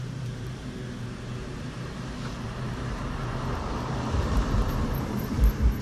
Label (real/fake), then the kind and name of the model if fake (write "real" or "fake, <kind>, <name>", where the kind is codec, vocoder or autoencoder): fake, vocoder, BigVGAN v2